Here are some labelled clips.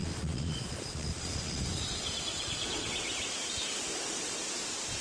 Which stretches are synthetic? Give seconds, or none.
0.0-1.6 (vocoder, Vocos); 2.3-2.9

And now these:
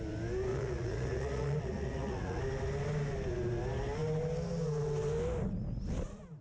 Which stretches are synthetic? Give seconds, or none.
0.5-2.4 (vocoder, Vocos)

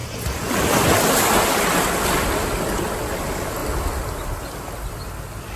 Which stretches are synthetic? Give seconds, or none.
none

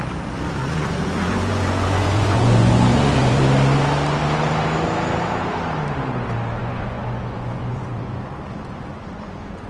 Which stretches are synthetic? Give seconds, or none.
0.6-3.4 (vocoder, Vocos); 6.6-9.7

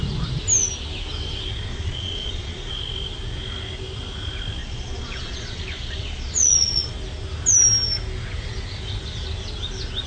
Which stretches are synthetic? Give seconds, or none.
1.7-2.7 (vocoder, Vocos); 4.6-6.9